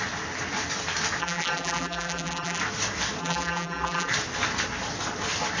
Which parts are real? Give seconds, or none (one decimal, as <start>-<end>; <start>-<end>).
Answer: 0.0-1.2; 2.6-3.2; 4.1-5.6